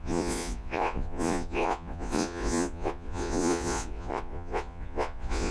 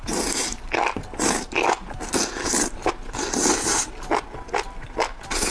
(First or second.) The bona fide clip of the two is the second